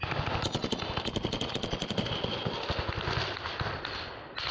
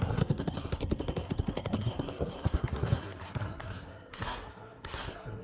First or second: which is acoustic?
first